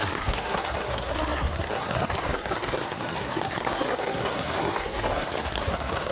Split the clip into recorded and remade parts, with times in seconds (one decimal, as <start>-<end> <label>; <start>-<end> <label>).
0.0-6.1 remade